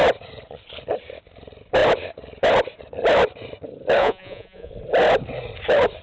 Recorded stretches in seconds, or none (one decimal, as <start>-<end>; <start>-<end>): 0.0-4.0; 4.7-6.0

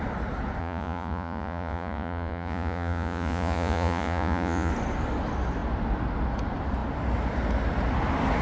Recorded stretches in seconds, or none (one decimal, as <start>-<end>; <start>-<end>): 0.0-0.6; 4.7-8.4